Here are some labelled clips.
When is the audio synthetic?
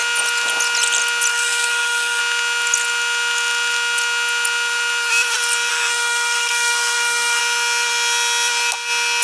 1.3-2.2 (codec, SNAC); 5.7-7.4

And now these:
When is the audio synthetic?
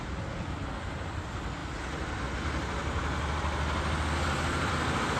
none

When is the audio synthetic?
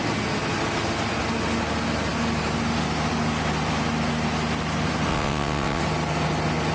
5.1-5.8 (vocoder, WaveNeXt)